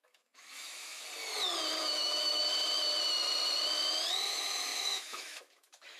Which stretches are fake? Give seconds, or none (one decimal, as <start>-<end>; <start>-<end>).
0.0-1.0; 1.8-2.4; 4.3-6.0